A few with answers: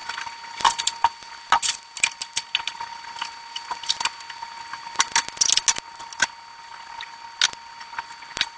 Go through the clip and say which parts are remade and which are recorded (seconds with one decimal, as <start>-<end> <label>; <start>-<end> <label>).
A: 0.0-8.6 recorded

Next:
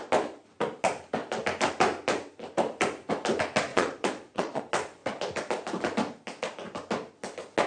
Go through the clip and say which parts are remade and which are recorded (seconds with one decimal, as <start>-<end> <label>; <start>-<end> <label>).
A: 0.0-3.7 recorded; 3.7-4.6 remade; 4.6-7.7 recorded

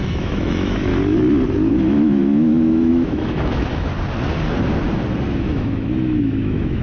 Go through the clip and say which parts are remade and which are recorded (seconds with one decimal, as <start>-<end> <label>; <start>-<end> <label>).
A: 0.0-0.9 remade; 0.9-1.7 recorded; 1.7-3.9 remade; 3.9-5.4 recorded; 5.4-6.8 remade

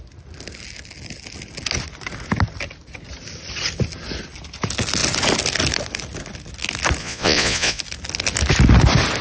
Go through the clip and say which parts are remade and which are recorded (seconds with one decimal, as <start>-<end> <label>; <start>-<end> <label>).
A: 0.0-7.0 recorded; 7.0-7.8 remade; 7.8-9.2 recorded

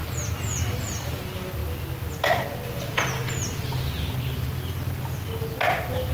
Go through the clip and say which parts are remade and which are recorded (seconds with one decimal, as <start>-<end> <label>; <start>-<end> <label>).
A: 0.0-6.1 recorded